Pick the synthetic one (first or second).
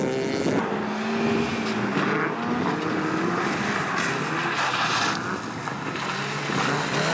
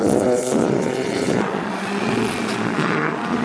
second